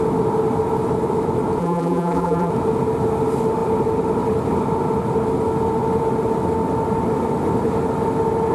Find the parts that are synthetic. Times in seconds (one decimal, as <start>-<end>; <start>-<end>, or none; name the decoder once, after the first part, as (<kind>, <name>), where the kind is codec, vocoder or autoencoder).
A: 1.6-2.5 (vocoder, BigVGAN v2)